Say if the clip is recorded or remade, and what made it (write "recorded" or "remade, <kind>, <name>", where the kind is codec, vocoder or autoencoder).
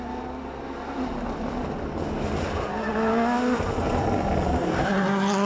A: recorded